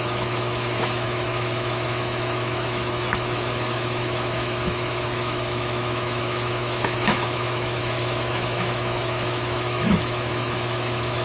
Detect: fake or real fake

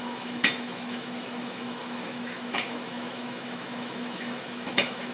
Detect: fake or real fake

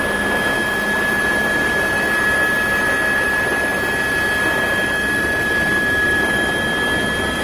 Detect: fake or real real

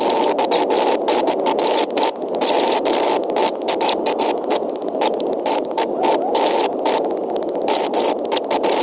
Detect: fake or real real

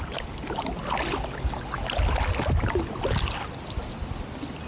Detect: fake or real real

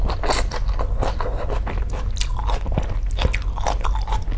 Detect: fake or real real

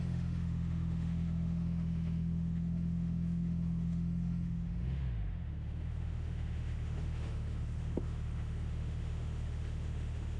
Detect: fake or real fake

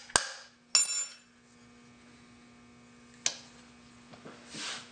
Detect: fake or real real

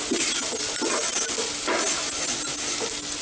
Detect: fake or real real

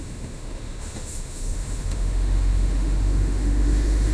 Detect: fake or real fake